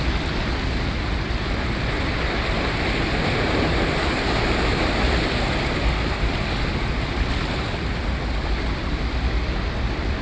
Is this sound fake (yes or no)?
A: no